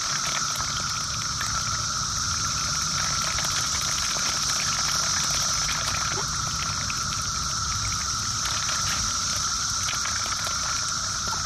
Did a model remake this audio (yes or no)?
no